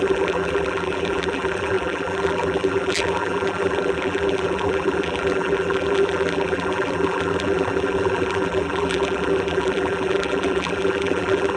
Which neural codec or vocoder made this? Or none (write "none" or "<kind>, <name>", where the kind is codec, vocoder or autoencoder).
vocoder, BigVGAN v2